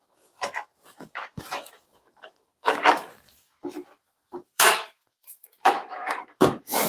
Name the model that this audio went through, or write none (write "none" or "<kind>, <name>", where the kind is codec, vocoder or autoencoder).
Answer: autoencoder, DAC-VAE